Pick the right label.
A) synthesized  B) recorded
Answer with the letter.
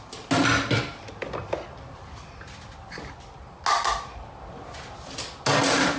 B